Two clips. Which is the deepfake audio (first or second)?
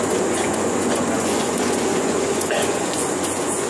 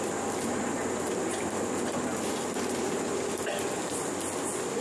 first